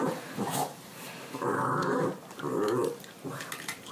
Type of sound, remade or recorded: recorded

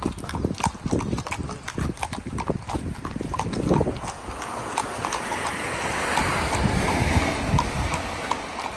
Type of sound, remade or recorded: recorded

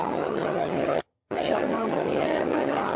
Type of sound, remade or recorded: remade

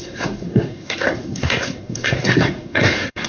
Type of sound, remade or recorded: remade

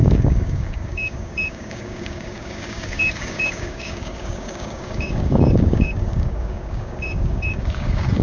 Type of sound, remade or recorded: remade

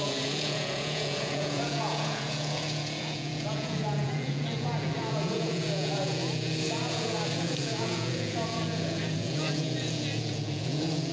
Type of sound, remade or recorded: remade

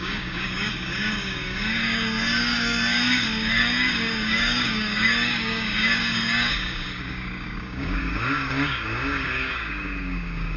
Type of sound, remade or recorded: remade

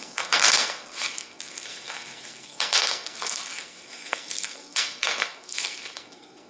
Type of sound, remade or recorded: remade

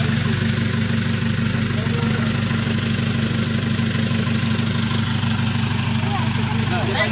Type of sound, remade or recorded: recorded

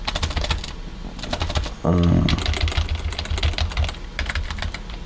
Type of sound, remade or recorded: recorded